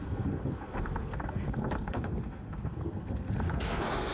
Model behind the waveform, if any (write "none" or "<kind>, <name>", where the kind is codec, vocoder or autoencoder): codec, SNAC